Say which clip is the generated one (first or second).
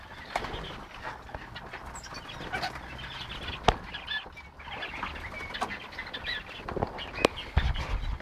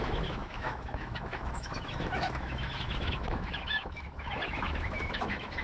second